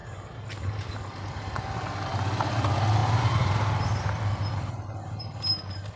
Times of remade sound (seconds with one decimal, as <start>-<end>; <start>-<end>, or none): 0.0-0.7; 3.0-5.2